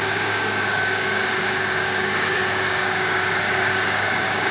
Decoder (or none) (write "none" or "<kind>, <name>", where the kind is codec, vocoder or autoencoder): codec, DAC